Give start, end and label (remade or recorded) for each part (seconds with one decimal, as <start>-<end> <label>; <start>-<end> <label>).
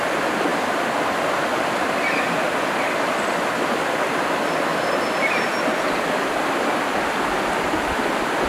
0.0-8.5 recorded